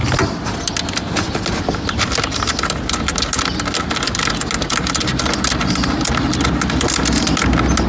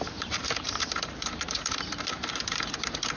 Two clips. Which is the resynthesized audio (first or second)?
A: second